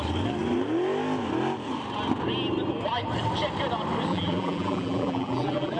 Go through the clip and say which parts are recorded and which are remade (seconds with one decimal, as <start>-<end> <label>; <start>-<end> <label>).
0.0-4.1 recorded; 4.1-5.8 remade